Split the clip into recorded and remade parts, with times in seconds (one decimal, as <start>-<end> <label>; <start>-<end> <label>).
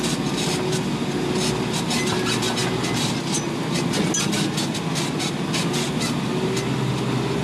0.0-7.4 recorded